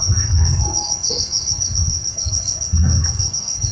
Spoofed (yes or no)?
yes